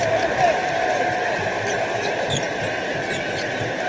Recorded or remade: recorded